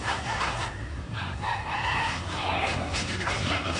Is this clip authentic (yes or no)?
no